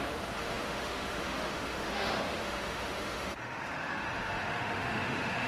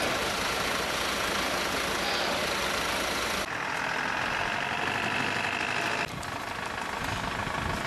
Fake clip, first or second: first